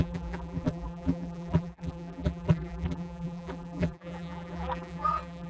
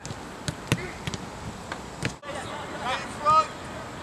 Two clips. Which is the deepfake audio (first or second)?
first